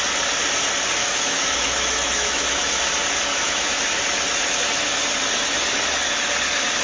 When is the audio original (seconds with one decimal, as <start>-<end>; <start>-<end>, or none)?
0.0-1.0; 2.8-3.3; 4.0-6.8

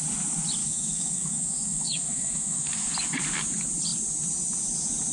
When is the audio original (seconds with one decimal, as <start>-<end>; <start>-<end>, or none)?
0.0-0.6; 2.7-5.1

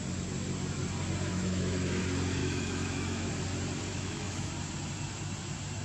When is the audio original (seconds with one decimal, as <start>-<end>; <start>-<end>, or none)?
0.0-1.3; 2.0-2.4; 3.3-3.9; 4.5-5.8

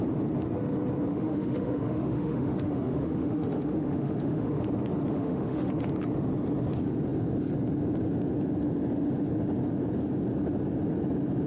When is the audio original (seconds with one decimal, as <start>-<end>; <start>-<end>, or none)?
0.0-1.1; 4.6-5.1; 5.7-11.5

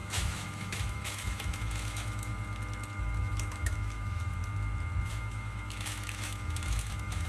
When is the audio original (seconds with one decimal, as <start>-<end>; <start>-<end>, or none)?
2.3-3.0; 4.4-5.1

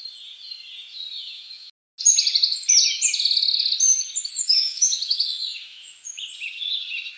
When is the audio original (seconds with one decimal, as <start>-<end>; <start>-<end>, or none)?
0.0-1.2; 1.7-4.3; 6.3-7.2